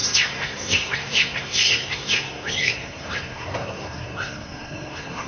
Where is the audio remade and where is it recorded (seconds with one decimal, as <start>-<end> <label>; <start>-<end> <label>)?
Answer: 0.0-5.3 remade